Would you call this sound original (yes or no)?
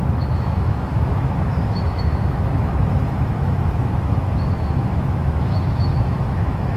no